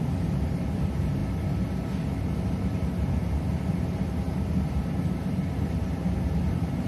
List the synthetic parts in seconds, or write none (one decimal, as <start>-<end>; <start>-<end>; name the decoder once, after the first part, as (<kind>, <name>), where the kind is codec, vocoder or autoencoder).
0.0-6.9 (vocoder, BigVGAN v2)